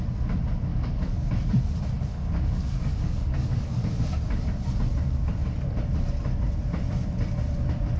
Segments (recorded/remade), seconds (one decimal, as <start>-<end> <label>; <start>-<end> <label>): 0.0-0.7 recorded; 0.7-1.3 remade; 1.3-2.1 recorded; 2.1-3.9 remade; 3.9-8.0 recorded